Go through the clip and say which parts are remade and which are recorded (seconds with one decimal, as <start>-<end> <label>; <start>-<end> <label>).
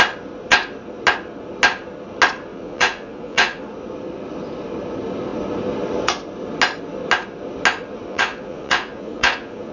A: 0.0-2.5 recorded; 2.5-3.6 remade; 3.6-8.1 recorded; 8.1-9.7 remade